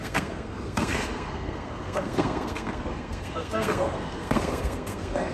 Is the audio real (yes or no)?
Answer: no